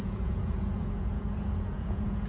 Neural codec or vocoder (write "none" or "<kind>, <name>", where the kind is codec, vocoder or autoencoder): vocoder, Vocos